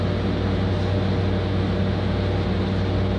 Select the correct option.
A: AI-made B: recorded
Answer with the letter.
B